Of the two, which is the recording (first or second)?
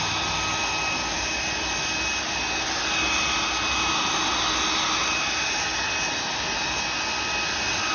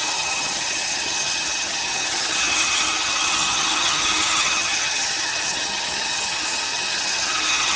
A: first